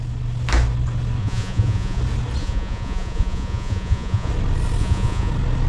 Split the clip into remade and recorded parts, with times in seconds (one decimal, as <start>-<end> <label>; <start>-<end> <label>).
0.0-1.2 recorded; 1.2-2.0 remade; 2.0-2.4 recorded; 2.4-4.3 remade; 4.3-4.8 recorded; 4.8-5.3 remade; 5.3-5.7 recorded